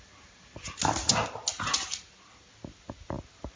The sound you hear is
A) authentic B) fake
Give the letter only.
A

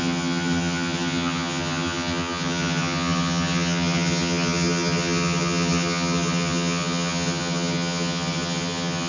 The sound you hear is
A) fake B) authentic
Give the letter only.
A